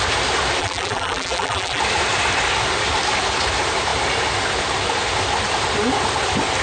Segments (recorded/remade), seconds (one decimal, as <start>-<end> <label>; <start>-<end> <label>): 0.0-0.6 recorded; 0.6-1.8 remade; 1.8-6.6 recorded